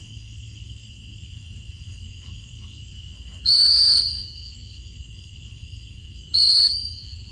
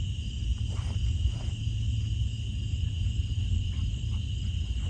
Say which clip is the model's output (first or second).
first